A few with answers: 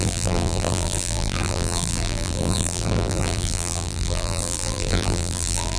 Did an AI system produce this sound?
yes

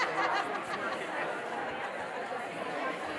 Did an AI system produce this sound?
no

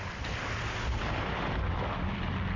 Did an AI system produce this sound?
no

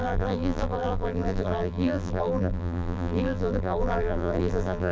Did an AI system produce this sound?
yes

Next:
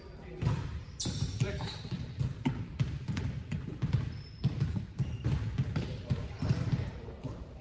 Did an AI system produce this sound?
yes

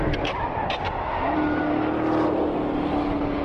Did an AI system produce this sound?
no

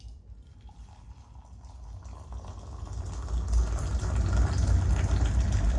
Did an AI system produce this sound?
no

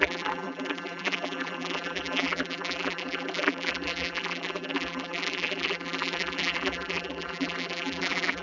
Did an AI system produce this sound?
yes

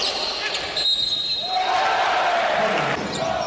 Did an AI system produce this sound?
no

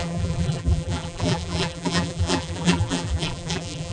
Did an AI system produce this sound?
yes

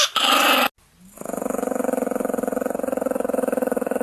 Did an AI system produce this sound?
no